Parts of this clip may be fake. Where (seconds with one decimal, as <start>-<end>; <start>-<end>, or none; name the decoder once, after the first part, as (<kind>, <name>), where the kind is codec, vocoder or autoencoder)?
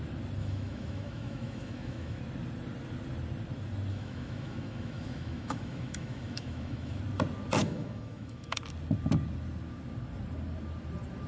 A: 0.4-2.2 (autoencoder, DAC-VAE); 3.9-7.0; 7.6-8.6